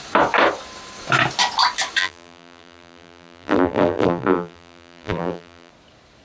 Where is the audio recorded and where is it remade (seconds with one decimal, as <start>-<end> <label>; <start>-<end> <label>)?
0.0-2.0 recorded; 2.0-5.7 remade; 5.7-6.2 recorded